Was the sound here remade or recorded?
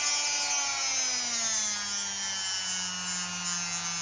recorded